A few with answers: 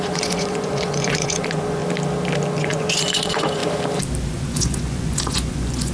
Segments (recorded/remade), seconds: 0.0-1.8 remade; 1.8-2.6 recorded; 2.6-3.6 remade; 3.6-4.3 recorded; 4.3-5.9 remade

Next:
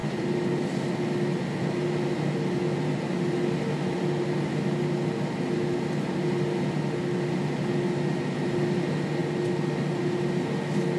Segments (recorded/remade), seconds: 0.0-11.0 recorded

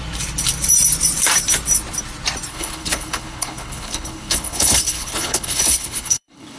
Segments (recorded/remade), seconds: 0.0-2.5 recorded; 2.5-6.6 remade

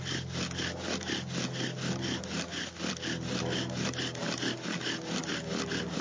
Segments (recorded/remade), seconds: 0.0-6.0 recorded

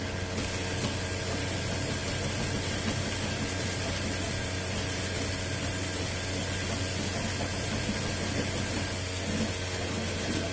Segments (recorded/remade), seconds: 0.0-10.5 recorded

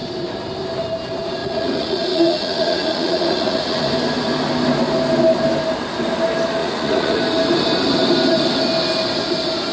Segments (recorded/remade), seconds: 0.0-1.4 recorded; 1.4-3.9 remade; 3.9-6.6 recorded; 6.6-7.2 remade; 7.2-9.7 recorded